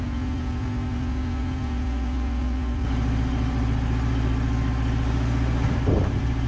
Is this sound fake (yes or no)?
no